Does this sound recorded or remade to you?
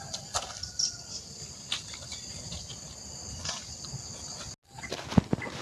recorded